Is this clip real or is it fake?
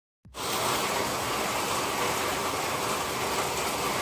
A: real